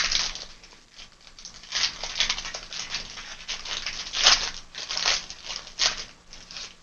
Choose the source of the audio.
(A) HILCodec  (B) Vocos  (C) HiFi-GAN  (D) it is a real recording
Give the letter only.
D